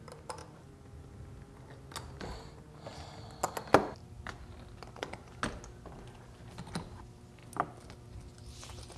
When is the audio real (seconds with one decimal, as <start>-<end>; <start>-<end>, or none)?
0.0-9.0